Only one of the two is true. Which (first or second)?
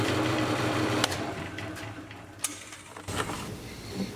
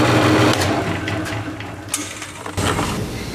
second